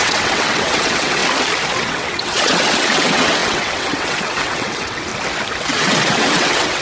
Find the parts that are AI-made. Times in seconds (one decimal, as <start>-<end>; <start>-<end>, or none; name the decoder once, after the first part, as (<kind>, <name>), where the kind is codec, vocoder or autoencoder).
0.0-1.2 (vocoder, WaveNeXt); 1.7-5.1; 5.6-6.8